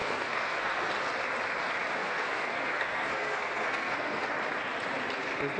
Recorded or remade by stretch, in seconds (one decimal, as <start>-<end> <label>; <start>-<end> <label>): 0.0-0.8 remade; 0.8-2.0 recorded; 2.0-4.3 remade; 4.3-5.6 recorded